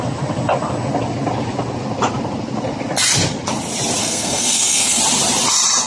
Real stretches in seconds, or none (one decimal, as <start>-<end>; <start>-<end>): 0.0-4.0; 5.0-5.9